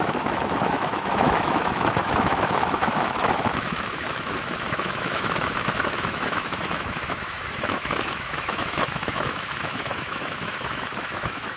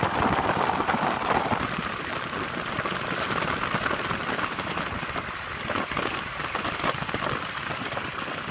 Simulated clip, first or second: first